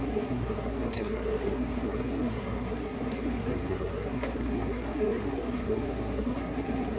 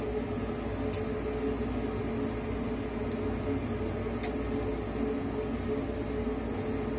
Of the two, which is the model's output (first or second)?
first